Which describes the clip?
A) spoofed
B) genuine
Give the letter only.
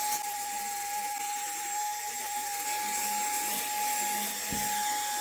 B